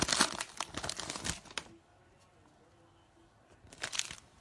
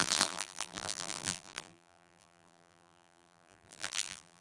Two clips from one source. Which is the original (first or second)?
first